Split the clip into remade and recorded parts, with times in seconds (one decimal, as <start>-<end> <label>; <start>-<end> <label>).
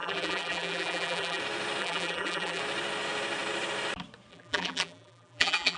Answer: 0.0-1.4 remade; 1.4-1.8 recorded; 1.8-2.6 remade; 2.6-4.3 recorded; 4.3-5.8 remade